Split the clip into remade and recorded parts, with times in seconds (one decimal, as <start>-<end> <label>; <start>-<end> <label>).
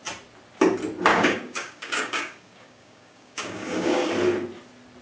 0.0-1.1 recorded; 1.1-4.1 remade; 4.1-5.0 recorded